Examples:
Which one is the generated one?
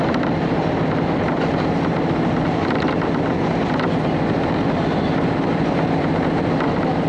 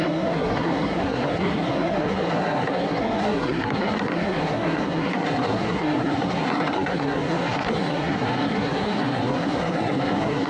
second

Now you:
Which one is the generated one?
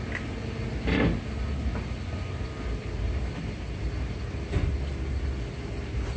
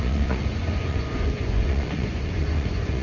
second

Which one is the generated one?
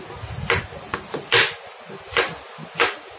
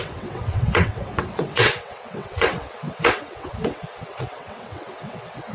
second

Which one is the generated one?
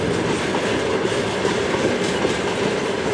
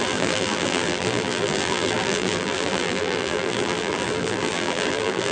second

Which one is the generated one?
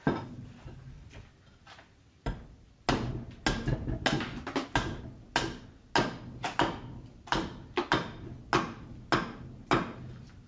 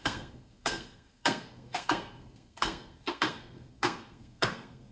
second